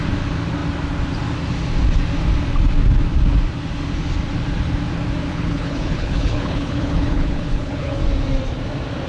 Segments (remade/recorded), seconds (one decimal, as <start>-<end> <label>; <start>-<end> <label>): 0.0-5.3 recorded; 5.3-8.0 remade; 8.0-9.1 recorded